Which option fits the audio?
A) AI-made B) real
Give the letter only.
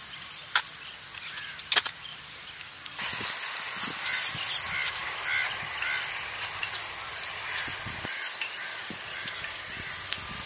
B